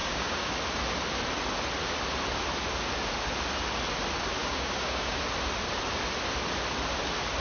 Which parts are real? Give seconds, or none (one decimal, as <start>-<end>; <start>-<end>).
0.5-4.4; 5.2-7.4